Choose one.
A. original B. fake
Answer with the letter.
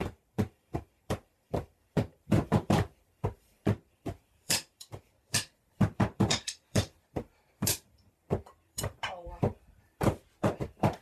B